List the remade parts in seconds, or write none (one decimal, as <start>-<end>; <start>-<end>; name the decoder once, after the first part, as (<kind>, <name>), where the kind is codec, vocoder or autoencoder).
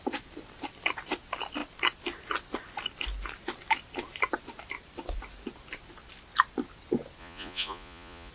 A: 7.2-8.3 (vocoder, Vocos)